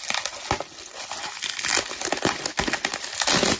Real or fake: real